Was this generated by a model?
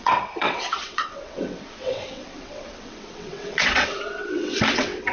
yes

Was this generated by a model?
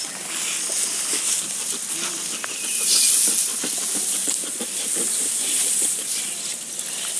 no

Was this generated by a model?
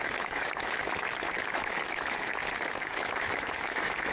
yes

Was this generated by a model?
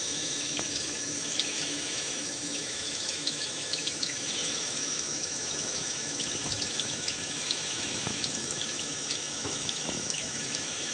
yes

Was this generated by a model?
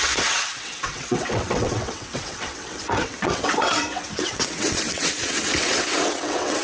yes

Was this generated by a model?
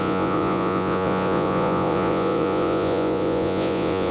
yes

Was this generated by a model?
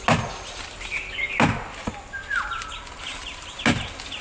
no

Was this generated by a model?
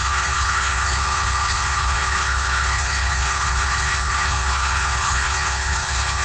yes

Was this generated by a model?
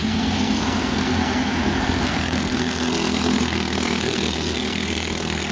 yes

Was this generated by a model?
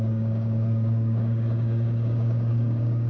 yes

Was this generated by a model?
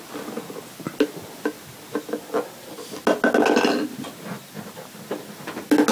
no